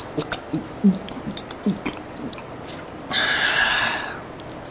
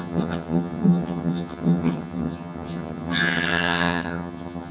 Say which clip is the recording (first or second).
first